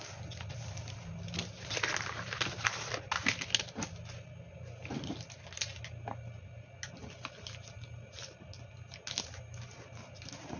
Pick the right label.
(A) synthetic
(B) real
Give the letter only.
B